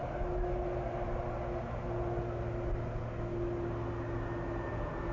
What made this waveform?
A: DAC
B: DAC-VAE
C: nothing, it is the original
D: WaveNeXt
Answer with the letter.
C